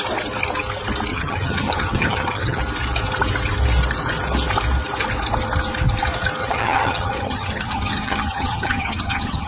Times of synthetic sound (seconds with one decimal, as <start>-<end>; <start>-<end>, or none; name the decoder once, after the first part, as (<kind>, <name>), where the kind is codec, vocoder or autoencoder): 1.1-2.6 (vocoder, HiFi-GAN); 6.4-9.5